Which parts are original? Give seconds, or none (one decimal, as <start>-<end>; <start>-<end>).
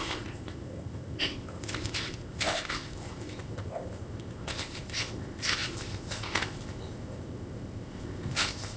none